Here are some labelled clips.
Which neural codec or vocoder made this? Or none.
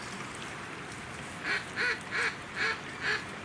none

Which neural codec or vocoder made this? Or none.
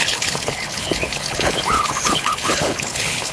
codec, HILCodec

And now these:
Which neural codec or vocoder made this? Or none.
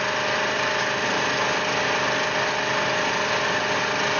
none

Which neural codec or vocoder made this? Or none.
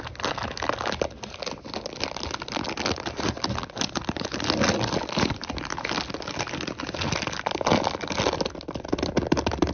none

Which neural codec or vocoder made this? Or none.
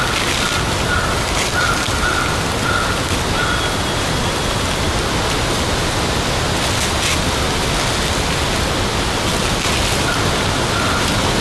none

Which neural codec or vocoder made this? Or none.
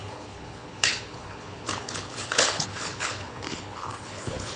codec, HILCodec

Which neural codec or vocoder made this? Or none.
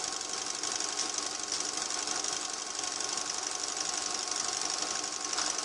none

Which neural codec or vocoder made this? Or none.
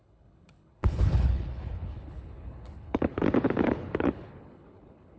codec, HILCodec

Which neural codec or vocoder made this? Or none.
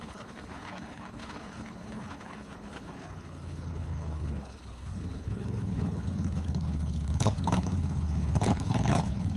codec, HILCodec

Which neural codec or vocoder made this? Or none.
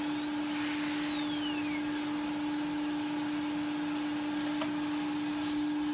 none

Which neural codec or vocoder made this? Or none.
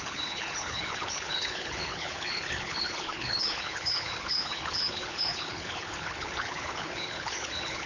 codec, HILCodec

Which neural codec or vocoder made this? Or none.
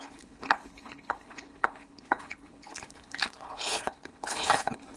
codec, HILCodec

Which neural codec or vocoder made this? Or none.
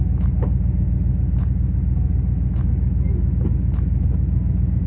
none